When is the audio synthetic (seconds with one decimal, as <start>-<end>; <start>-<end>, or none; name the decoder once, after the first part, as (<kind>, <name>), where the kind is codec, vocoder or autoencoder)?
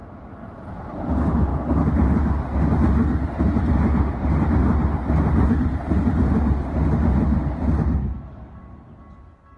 none